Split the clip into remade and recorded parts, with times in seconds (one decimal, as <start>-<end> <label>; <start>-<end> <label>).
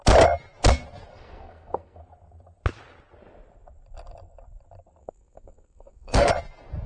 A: 0.0-1.1 recorded; 1.1-2.0 remade; 2.0-5.0 recorded; 5.0-6.3 remade; 6.3-6.9 recorded